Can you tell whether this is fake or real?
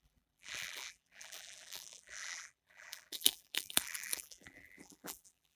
fake